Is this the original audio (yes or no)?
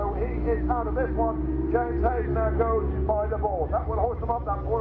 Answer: yes